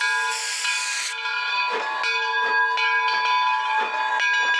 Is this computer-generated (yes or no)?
no